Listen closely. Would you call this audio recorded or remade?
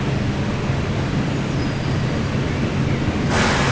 recorded